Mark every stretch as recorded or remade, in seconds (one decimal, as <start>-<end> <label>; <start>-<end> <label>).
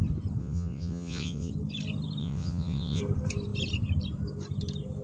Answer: 0.0-0.4 recorded; 0.4-1.5 remade; 1.5-2.2 recorded; 2.2-3.0 remade; 3.0-5.0 recorded